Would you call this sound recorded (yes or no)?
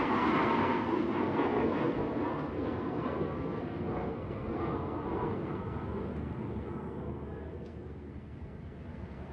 no